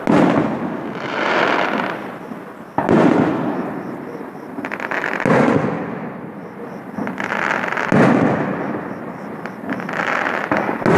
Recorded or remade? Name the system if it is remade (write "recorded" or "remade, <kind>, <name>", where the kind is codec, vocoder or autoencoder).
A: recorded